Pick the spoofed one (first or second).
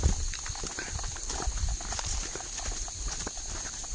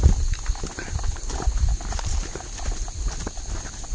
first